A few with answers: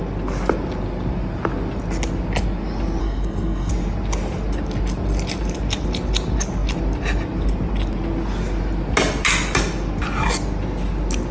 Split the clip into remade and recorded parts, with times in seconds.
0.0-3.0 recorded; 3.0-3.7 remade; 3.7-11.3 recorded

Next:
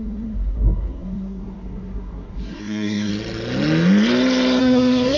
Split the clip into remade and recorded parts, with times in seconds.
0.0-3.1 remade; 3.1-4.6 recorded; 4.6-5.2 remade